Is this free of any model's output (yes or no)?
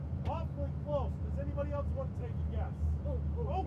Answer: yes